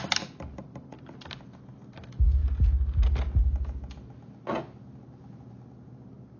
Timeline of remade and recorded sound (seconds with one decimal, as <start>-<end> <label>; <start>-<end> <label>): 0.0-6.4 recorded

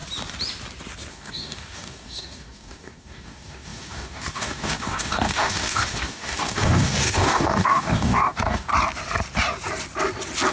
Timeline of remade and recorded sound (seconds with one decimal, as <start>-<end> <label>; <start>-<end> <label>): 0.0-1.1 recorded; 1.1-8.7 remade; 8.7-10.5 recorded

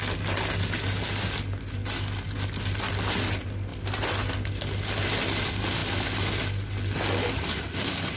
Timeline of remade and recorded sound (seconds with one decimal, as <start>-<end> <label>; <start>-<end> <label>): 0.0-8.2 recorded

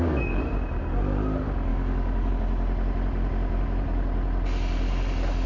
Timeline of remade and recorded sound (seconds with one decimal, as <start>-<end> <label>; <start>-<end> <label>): 0.0-0.5 remade; 0.5-1.7 recorded; 1.7-2.3 remade; 2.3-5.5 recorded